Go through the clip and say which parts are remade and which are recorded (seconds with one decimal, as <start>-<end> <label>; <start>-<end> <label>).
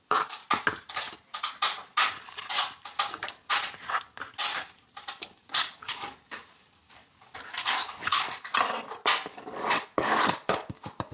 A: 0.0-0.4 remade; 0.4-5.1 recorded; 5.1-8.5 remade; 8.5-9.3 recorded; 9.3-11.1 remade